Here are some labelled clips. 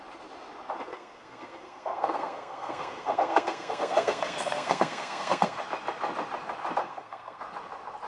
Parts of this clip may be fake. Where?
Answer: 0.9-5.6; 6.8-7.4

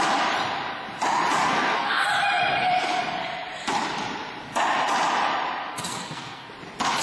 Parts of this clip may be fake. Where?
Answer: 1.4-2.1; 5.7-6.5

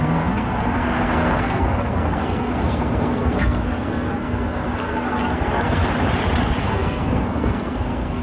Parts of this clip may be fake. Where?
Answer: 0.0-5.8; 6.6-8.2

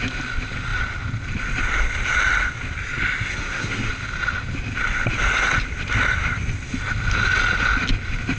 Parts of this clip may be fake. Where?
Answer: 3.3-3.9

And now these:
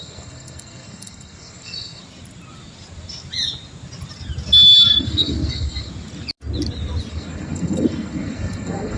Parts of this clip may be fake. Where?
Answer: 0.0-2.0; 5.0-5.9; 7.1-9.0